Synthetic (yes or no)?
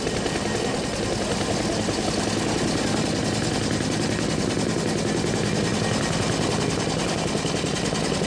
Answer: no